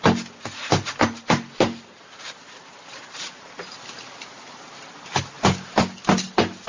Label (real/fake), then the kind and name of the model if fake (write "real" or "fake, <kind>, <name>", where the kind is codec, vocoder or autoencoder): real